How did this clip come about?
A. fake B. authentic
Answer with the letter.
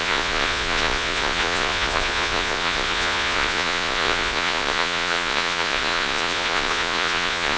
A